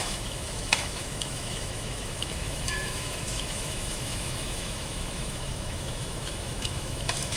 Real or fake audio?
fake